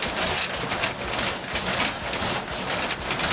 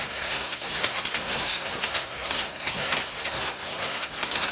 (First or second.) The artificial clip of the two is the second